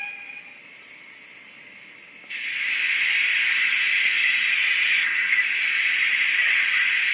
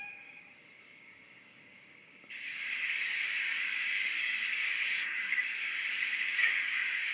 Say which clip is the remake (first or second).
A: second